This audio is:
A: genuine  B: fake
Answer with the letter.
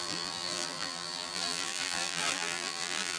B